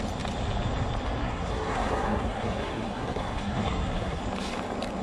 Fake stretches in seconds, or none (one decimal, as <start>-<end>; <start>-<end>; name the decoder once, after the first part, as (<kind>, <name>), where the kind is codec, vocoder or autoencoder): 1.2-4.2 (codec, SNAC)